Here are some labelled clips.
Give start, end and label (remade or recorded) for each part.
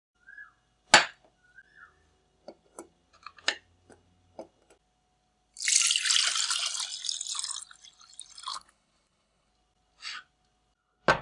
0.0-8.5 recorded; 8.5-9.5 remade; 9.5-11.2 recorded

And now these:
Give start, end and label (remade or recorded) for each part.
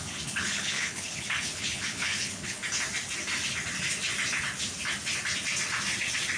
0.0-2.6 remade; 2.6-6.4 recorded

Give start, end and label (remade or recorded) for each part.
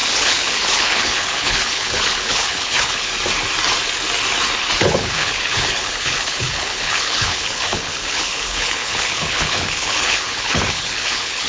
0.0-3.1 remade; 3.1-4.8 recorded; 4.8-11.5 remade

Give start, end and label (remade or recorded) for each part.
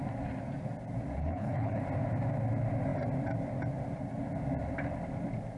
0.0-1.2 recorded; 1.2-1.8 remade; 1.8-5.6 recorded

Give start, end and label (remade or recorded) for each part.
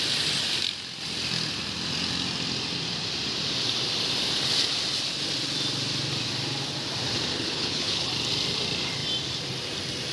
0.0-7.3 recorded; 7.3-8.1 remade; 8.1-10.1 recorded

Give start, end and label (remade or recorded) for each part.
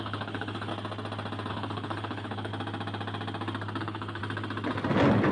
0.0-0.7 remade; 0.7-1.5 recorded; 1.5-2.5 remade; 2.5-3.8 recorded; 3.8-4.2 remade; 4.2-5.3 recorded